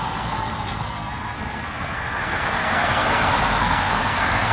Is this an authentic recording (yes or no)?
no